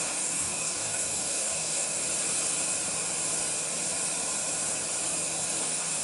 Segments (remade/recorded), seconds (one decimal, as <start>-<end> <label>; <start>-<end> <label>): 0.0-2.0 remade; 2.0-5.6 recorded; 5.6-6.0 remade

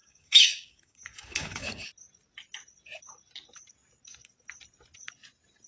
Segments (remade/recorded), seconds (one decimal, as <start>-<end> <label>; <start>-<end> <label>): 0.0-1.9 remade; 1.9-5.7 recorded

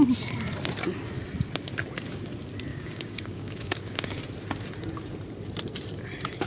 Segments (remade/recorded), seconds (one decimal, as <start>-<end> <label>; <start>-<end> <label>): 0.0-2.7 recorded; 2.7-4.2 remade; 4.2-6.5 recorded

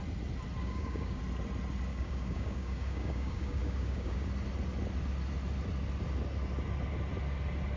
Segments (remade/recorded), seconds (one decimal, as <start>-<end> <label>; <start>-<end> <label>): 0.0-0.6 recorded; 0.6-1.2 remade; 1.2-1.9 recorded; 1.9-4.3 remade; 4.3-7.8 recorded

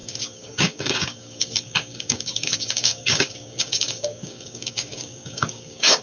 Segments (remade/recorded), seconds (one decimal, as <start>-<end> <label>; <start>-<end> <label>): 0.0-6.0 remade

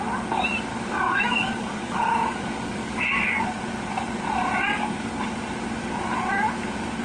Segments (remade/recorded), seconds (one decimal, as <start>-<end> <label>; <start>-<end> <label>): 0.0-0.7 recorded; 0.7-3.4 remade; 3.4-4.7 recorded; 4.7-5.2 remade; 5.2-7.0 recorded

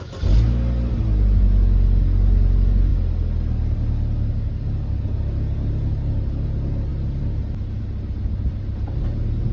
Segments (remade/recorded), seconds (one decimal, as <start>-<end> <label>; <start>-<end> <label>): 0.0-9.5 recorded